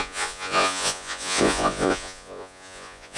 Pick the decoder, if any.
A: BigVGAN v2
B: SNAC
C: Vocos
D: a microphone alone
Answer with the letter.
C